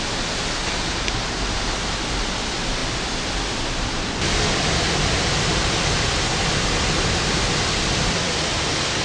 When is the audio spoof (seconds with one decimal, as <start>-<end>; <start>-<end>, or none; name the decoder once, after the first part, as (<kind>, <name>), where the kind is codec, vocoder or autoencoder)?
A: none